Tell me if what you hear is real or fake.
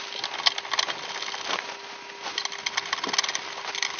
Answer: real